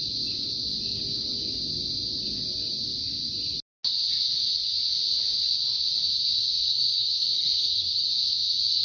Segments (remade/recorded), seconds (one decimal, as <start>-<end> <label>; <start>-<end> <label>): 0.0-6.7 recorded; 6.7-8.1 remade; 8.1-8.8 recorded

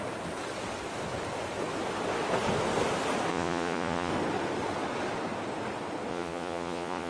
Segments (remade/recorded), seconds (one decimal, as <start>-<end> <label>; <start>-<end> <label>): 0.0-3.3 recorded; 3.3-4.1 remade; 4.1-6.1 recorded; 6.1-7.1 remade

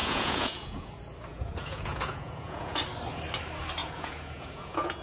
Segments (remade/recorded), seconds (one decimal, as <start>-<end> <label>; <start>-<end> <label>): 0.0-0.9 remade; 0.9-1.3 recorded; 1.3-2.8 remade; 2.8-3.8 recorded; 3.8-5.0 remade

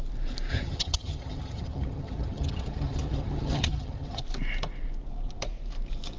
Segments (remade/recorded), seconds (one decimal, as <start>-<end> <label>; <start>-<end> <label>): 0.0-0.5 recorded; 0.5-4.2 remade; 4.2-6.2 recorded